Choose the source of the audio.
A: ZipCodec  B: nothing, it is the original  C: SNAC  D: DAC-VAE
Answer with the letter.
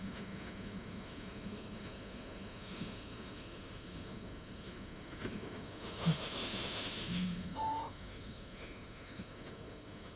D